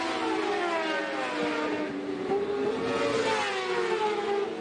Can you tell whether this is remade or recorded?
recorded